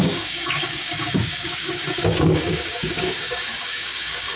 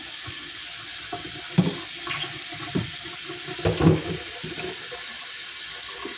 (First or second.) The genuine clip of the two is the second